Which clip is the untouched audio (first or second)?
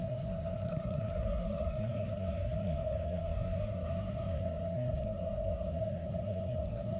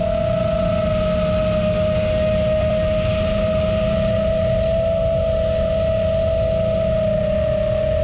second